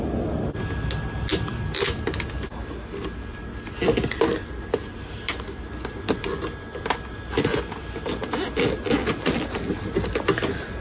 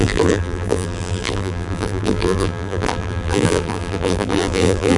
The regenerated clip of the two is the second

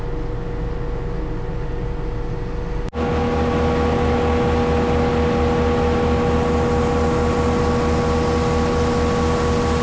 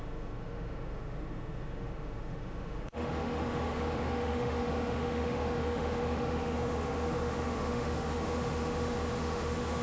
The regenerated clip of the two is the second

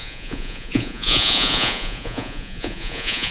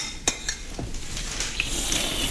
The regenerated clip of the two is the first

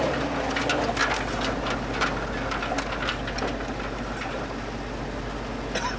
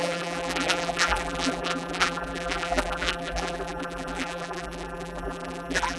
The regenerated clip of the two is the second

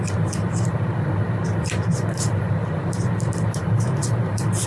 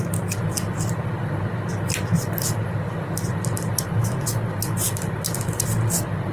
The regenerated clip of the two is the first